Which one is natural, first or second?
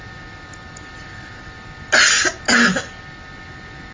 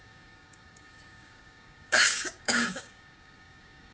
first